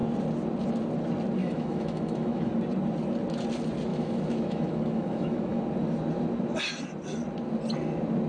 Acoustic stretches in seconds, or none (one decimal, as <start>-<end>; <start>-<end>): 0.0-1.4; 2.5-3.9; 5.6-8.3